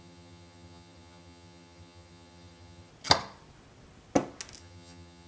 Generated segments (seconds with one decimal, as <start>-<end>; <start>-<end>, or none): 0.0-2.9; 4.6-5.3